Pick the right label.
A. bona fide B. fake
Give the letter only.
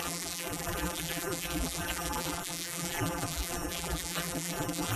B